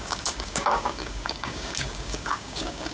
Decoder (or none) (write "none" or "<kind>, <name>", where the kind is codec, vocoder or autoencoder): codec, DAC